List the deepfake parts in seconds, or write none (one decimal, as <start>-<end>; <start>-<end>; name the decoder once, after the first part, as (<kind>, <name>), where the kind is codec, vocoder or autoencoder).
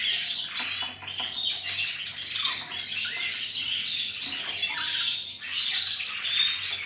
none